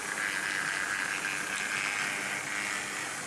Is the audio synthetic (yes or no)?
no